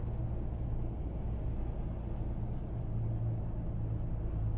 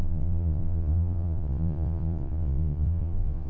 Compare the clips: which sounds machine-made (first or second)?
second